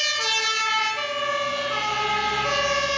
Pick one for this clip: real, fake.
real